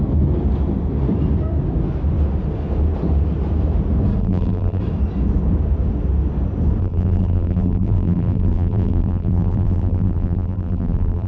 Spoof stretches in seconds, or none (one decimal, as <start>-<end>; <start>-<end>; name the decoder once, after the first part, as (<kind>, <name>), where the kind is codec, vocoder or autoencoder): 4.2-4.8 (vocoder, BigVGAN v2); 6.8-11.3